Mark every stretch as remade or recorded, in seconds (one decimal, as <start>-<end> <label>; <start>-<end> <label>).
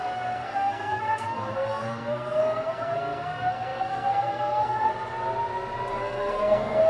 0.0-4.9 remade; 4.9-5.9 recorded; 5.9-6.9 remade